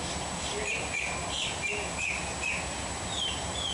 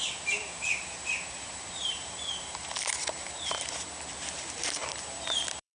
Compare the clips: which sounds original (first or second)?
first